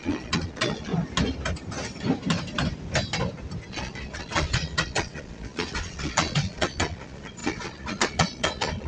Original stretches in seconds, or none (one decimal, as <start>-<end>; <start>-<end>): 0.9-3.7